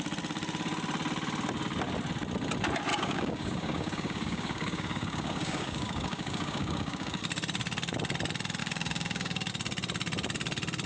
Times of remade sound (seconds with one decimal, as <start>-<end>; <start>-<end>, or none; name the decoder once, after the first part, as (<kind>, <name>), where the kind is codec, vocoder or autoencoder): 2.9-7.2 (codec, DAC); 8.6-9.5